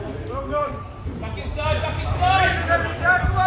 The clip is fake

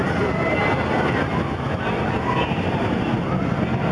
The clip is real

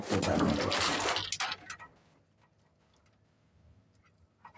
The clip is real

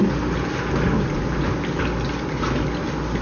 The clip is real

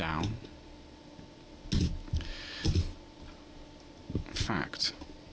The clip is real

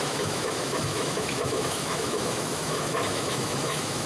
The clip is fake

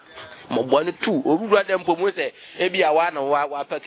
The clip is real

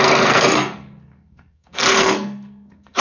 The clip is fake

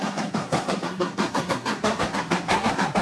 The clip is fake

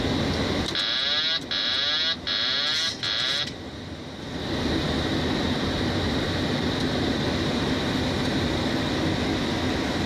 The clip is real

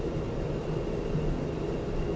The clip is real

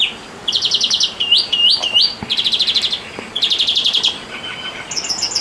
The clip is real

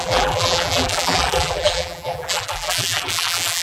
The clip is fake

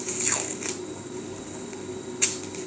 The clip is real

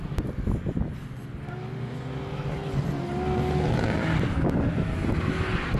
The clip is real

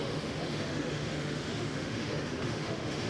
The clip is fake